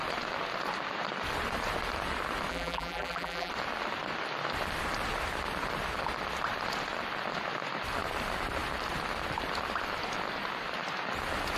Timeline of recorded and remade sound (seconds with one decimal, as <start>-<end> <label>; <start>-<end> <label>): 0.0-2.5 recorded; 2.5-3.5 remade; 3.5-11.6 recorded